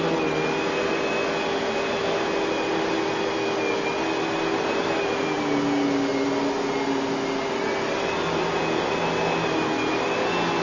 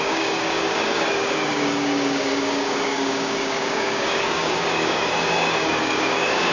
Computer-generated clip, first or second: second